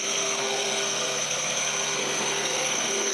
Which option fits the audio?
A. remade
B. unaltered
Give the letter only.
A